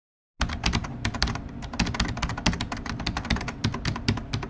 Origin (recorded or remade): recorded